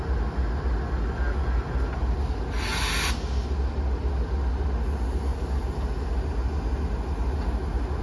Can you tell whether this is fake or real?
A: real